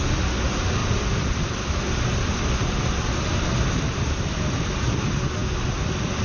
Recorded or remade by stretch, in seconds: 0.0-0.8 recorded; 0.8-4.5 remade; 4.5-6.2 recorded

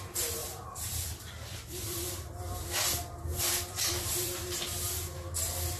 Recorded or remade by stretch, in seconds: 0.0-0.4 recorded; 0.4-2.5 remade; 2.5-3.3 recorded; 3.3-4.3 remade; 4.3-5.8 recorded